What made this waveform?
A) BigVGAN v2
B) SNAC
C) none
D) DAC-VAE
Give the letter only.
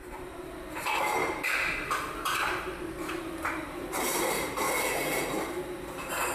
A